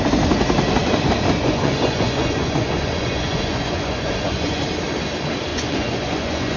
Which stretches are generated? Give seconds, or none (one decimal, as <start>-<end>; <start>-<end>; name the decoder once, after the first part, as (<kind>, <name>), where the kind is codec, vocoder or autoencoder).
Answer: 1.4-4.6 (vocoder, Vocos); 5.5-6.6